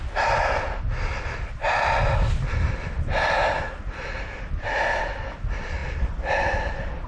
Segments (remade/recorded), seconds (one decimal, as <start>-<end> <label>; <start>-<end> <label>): 0.0-7.1 recorded